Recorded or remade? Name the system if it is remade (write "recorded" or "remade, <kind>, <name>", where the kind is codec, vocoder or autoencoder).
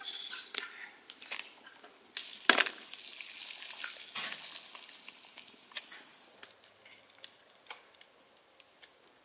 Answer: recorded